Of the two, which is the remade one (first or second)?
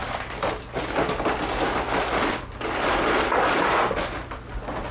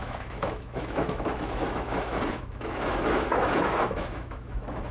second